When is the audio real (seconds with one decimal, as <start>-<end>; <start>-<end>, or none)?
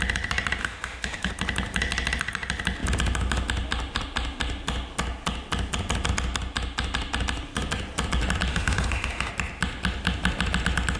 0.0-0.6; 1.3-8.5; 9.3-11.0